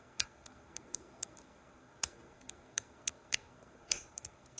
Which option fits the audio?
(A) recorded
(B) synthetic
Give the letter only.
B